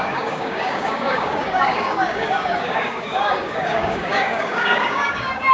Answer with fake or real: fake